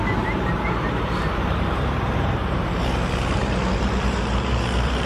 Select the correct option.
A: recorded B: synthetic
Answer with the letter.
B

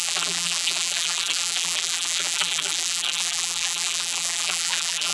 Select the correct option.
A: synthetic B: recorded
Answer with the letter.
A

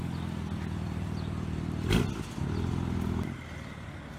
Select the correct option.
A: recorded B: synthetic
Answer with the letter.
A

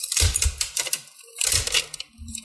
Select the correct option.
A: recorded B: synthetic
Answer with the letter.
B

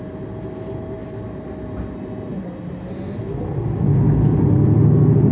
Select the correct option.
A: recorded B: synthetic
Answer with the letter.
A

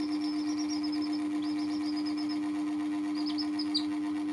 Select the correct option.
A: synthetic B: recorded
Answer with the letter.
B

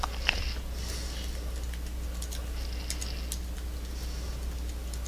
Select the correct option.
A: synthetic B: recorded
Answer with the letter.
B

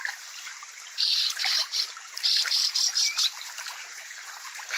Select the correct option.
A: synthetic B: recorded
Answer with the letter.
A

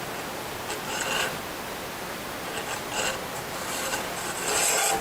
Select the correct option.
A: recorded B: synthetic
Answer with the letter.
A